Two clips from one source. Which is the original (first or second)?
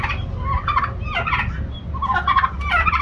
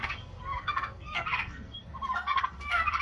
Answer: first